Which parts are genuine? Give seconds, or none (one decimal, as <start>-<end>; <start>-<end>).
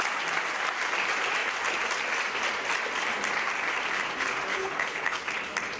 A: 0.0-4.5; 5.3-5.8